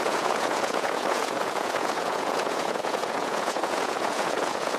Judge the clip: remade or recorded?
remade